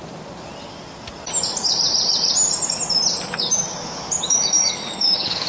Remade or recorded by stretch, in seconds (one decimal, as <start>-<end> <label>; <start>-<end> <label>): 0.0-3.3 recorded; 3.3-5.5 remade